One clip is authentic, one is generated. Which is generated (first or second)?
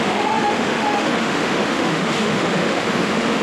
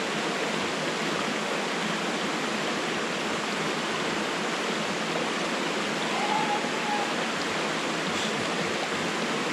first